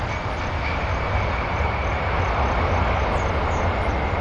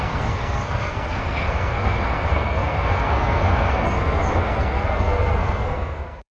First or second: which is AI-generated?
second